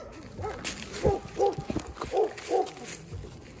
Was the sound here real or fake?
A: real